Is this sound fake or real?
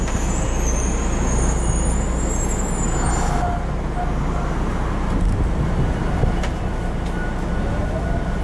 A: real